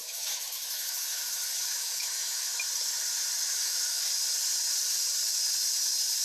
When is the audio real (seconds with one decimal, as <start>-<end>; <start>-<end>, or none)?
2.5-3.5; 4.0-6.2